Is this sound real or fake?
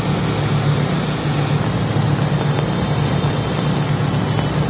real